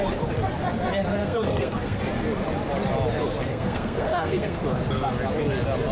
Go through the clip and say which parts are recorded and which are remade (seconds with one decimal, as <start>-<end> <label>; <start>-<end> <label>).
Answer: 0.0-1.1 recorded; 1.1-2.0 remade; 2.0-3.5 recorded; 3.5-4.6 remade; 4.6-5.9 recorded